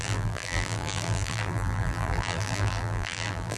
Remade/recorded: remade